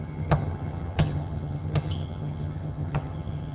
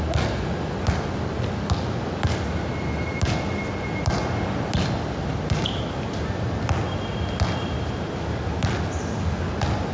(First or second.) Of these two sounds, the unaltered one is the second